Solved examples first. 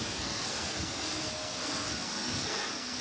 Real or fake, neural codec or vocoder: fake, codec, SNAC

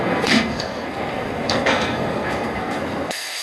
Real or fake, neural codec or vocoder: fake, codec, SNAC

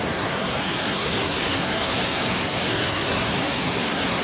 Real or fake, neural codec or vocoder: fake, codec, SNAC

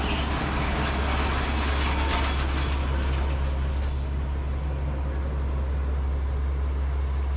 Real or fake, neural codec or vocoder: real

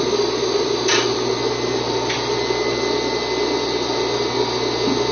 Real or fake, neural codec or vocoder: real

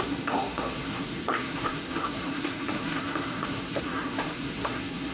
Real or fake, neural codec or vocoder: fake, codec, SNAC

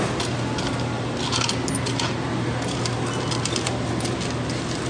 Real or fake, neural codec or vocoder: real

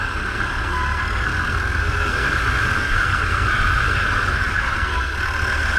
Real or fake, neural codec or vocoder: fake, codec, SNAC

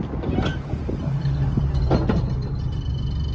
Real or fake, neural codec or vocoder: real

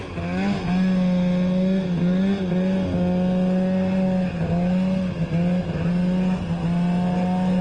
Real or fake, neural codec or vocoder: real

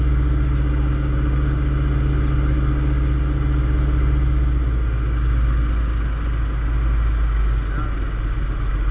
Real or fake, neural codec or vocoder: real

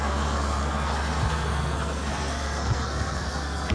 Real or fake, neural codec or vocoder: fake, codec, SNAC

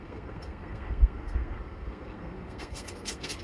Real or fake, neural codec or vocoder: fake, codec, SNAC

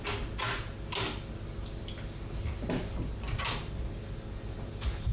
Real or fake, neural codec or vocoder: real